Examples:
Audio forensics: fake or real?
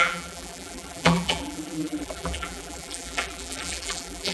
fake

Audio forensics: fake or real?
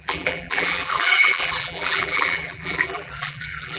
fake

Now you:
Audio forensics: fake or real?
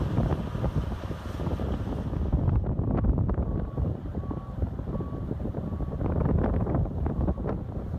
fake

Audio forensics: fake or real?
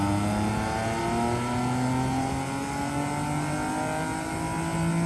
real